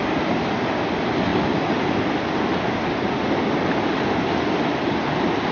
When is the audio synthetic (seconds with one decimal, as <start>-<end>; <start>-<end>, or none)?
none